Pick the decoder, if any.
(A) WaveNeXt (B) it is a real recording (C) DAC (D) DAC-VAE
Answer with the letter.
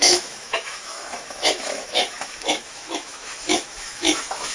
D